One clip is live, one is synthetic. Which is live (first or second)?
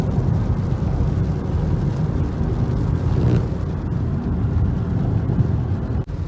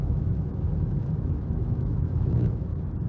first